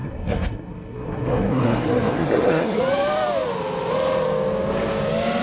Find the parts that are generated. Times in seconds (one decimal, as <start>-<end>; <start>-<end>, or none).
0.0-2.8